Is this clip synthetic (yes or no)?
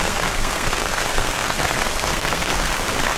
yes